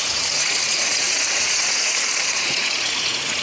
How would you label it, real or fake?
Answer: fake